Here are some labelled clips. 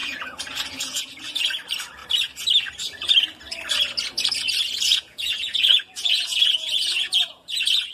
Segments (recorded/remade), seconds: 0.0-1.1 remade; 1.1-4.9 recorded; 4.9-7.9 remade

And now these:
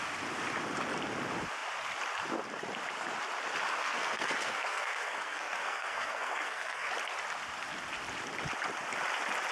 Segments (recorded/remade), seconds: 0.0-3.8 recorded; 3.8-6.9 remade; 6.9-9.5 recorded

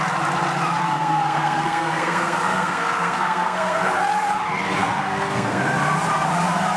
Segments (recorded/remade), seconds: 0.0-0.8 recorded; 0.8-3.9 remade; 3.9-4.8 recorded; 4.8-5.6 remade; 5.6-6.8 recorded

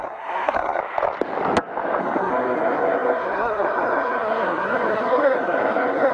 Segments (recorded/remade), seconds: 0.0-0.8 remade; 0.8-2.0 recorded; 2.0-6.1 remade

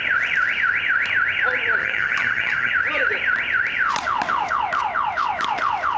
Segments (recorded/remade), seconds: 0.0-1.8 recorded; 1.8-2.7 remade; 2.7-6.0 recorded

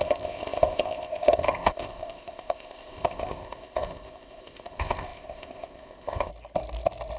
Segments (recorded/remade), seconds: 0.0-6.3 remade; 6.3-7.2 recorded

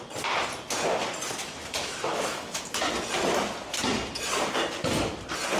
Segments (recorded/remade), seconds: 0.0-1.4 recorded; 1.4-2.6 remade; 2.6-5.6 recorded